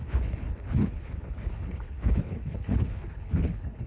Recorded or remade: remade